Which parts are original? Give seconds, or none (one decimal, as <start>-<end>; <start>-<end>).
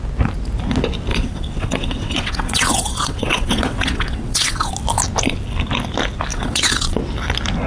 0.0-1.1; 4.7-6.3; 7.0-7.7